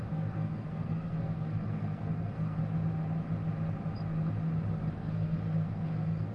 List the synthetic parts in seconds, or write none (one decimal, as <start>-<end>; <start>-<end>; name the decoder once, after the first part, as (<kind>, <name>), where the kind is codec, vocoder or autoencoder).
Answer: 0.0-2.6 (codec, SNAC); 4.9-6.3